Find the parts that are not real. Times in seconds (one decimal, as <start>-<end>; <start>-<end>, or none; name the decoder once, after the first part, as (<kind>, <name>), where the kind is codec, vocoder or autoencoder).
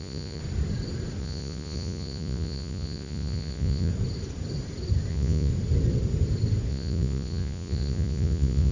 0.0-0.4 (vocoder, Vocos); 1.2-3.9; 5.1-5.5; 6.7-8.7